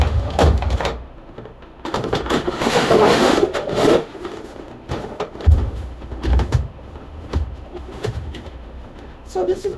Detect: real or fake fake